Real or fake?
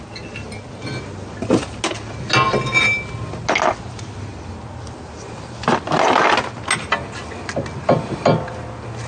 real